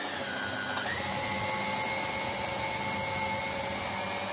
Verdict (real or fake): real